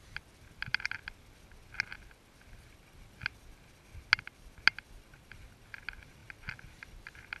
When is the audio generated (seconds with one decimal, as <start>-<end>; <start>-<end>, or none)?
none